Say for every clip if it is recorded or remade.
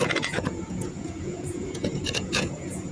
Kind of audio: remade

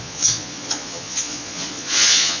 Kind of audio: remade